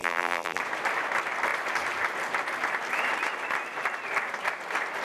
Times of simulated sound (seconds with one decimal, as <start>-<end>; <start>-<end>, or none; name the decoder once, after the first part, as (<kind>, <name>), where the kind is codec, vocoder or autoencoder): 0.0-0.6 (vocoder, BigVGAN v2)